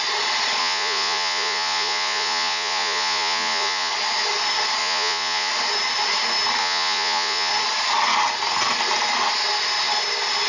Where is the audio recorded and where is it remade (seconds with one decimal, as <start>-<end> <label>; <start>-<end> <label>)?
0.0-0.6 recorded; 0.6-3.9 remade; 3.9-4.8 recorded; 4.8-5.5 remade; 5.5-6.6 recorded; 6.6-7.5 remade; 7.5-10.5 recorded